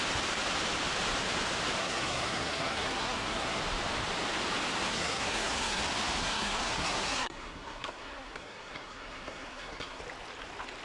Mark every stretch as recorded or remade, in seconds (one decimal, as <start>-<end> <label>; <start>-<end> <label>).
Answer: 0.0-1.8 recorded; 1.8-3.6 remade; 3.6-4.9 recorded; 4.9-5.8 remade; 5.8-6.2 recorded; 6.2-10.0 remade; 10.0-10.8 recorded